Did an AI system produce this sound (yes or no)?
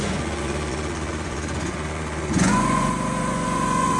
yes